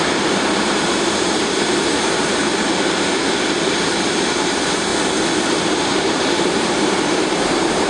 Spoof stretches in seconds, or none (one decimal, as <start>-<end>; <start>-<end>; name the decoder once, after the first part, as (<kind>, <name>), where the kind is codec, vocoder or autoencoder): 0.0-2.5 (vocoder, BigVGAN v2); 4.3-4.9; 5.8-7.9

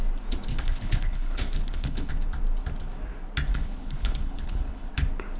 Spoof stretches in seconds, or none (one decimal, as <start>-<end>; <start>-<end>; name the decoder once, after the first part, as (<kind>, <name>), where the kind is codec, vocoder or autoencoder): 0.5-2.1 (codec, HILCodec); 3.5-4.9

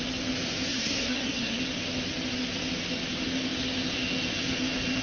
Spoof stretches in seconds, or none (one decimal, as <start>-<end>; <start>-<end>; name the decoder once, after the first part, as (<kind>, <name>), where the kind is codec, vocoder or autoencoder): 0.7-1.6 (codec, SNAC)

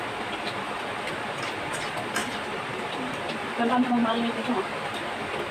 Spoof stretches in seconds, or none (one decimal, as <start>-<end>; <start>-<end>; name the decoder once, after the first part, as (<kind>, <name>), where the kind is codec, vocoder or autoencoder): 2.2-3.4 (vocoder, BigVGAN v2)

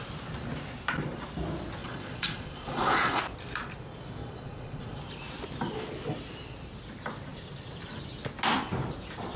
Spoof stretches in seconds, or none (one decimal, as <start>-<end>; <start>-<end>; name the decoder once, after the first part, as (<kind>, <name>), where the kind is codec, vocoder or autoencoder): 1.8-3.2 (vocoder, Vocos); 4.2-5.0

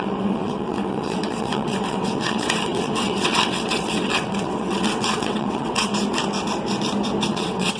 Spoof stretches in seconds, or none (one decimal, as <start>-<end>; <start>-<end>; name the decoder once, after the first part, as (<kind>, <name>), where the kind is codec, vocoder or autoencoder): 0.0-5.9 (vocoder, WaveNeXt); 7.3-7.8

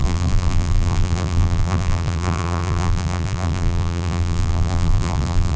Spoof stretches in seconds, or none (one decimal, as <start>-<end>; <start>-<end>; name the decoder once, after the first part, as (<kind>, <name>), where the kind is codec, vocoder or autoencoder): 0.0-5.6 (vocoder, BigVGAN v2)

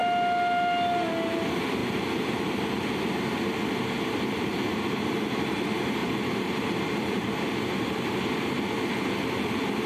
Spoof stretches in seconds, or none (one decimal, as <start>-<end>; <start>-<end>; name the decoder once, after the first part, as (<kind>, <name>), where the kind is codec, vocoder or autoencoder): 4.5-5.0 (vocoder, BigVGAN v2); 6.0-8.1